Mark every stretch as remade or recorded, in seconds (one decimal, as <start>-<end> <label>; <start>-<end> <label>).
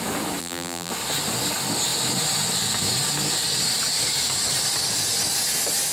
0.0-0.4 recorded; 0.4-0.9 remade; 0.9-5.9 recorded